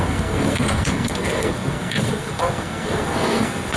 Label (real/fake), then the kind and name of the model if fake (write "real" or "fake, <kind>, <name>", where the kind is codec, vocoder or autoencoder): fake, codec, SNAC